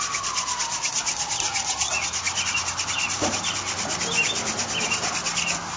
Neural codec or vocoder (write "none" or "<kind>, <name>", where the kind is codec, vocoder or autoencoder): none